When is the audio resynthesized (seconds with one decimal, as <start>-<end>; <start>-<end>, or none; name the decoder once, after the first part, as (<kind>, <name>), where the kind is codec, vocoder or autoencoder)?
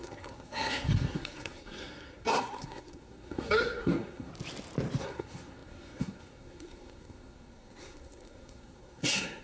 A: 0.0-4.3 (codec, SNAC); 5.0-9.4